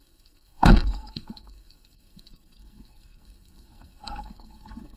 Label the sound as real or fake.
fake